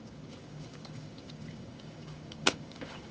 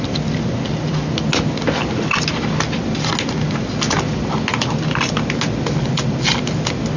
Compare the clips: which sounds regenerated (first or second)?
first